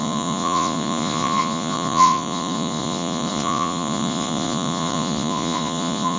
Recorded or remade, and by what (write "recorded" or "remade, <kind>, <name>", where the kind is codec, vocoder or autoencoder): remade, vocoder, Vocos